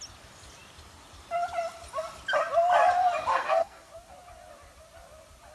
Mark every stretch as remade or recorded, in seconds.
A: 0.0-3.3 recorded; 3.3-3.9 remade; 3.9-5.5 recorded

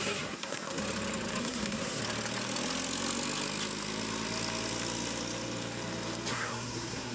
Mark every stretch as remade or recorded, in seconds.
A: 0.0-0.8 remade; 0.8-1.4 recorded; 1.4-2.0 remade; 2.0-6.3 recorded; 6.3-7.1 remade

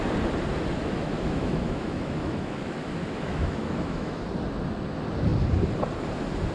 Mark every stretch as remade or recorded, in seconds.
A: 0.0-0.8 recorded; 0.8-4.2 remade; 4.2-6.5 recorded

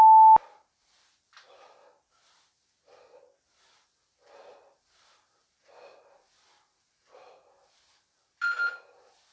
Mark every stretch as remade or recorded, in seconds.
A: 0.0-9.3 recorded

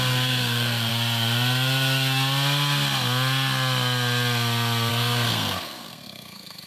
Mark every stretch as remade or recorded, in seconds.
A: 0.0-0.9 remade; 0.9-4.9 recorded; 4.9-6.7 remade